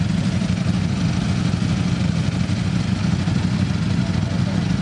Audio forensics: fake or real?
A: real